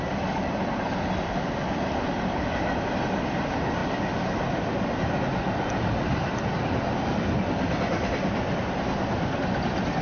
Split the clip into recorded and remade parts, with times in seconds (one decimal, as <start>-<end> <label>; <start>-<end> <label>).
0.0-10.0 recorded